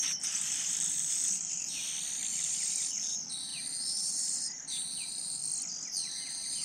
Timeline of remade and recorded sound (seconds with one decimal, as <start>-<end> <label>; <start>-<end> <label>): 0.0-1.8 remade; 1.8-2.3 recorded; 2.3-5.4 remade; 5.4-6.1 recorded; 6.1-6.6 remade